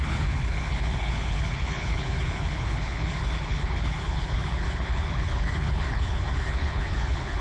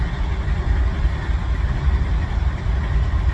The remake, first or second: first